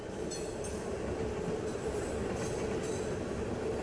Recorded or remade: recorded